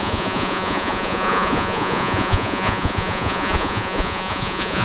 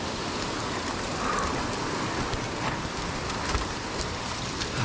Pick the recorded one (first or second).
second